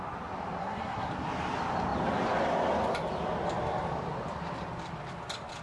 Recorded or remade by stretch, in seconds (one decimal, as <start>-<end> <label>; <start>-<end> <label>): 0.0-0.6 recorded; 0.6-1.1 remade; 1.1-5.6 recorded